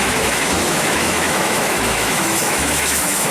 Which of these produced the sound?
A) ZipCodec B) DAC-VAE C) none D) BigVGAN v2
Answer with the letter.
B